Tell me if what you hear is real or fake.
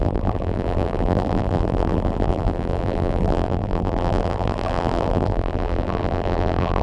fake